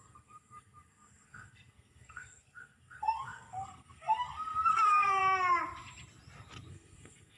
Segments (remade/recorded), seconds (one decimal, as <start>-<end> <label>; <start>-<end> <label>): 0.0-5.2 remade; 5.2-6.7 recorded; 6.7-7.4 remade